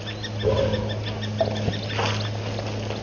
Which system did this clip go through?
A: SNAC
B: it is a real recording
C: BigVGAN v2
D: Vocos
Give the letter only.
B